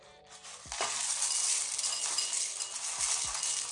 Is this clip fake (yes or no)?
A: no